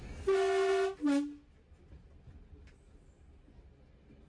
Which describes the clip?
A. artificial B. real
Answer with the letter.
B